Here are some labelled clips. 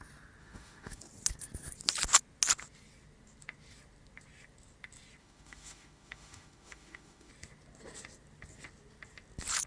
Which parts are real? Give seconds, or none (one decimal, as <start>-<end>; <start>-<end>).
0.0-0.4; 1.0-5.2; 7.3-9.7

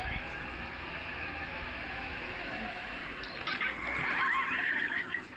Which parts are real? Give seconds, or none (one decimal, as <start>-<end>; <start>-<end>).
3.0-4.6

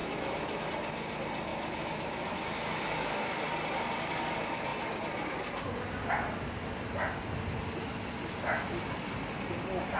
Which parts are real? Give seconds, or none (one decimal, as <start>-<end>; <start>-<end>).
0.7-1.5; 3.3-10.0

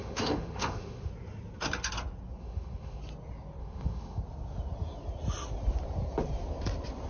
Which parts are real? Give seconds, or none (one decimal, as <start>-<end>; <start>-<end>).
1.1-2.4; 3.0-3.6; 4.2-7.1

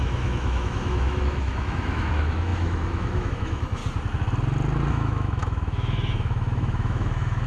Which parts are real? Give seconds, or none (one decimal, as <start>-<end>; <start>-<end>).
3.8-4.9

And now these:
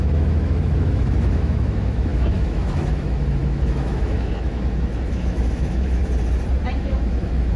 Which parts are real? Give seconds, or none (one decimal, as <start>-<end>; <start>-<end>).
6.0-6.8

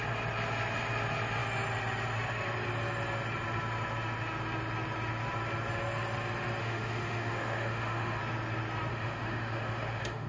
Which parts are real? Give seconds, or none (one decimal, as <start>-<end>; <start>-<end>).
0.0-6.6; 8.2-8.9

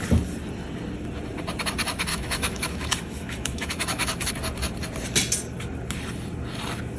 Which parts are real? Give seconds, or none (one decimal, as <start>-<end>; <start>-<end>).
0.0-2.1; 4.3-7.0